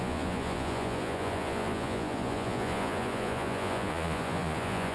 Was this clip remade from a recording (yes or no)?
yes